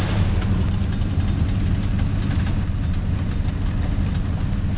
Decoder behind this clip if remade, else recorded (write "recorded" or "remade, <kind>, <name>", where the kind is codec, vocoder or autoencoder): recorded